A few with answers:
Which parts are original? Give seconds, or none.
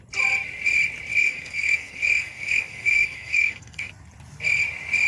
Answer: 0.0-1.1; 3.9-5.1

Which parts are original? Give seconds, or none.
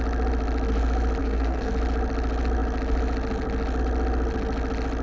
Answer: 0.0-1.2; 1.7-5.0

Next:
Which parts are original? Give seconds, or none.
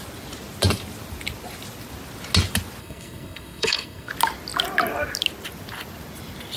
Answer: 0.0-2.8; 4.1-6.6